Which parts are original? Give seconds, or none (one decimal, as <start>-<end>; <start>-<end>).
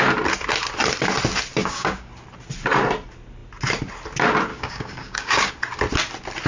0.0-1.6; 2.1-4.5; 5.5-6.5